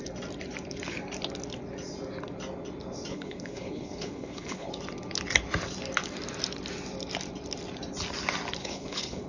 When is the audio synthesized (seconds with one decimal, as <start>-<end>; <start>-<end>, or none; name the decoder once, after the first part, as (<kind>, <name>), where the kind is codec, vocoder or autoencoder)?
3.1-4.7 (codec, HILCodec); 8.6-9.3